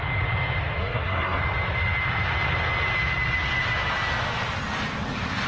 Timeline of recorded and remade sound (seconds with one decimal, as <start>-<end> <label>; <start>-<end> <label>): 0.0-0.8 recorded; 0.8-1.4 remade; 1.4-5.5 recorded